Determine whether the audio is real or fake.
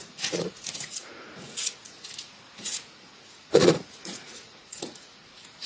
fake